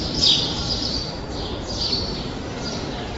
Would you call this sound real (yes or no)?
no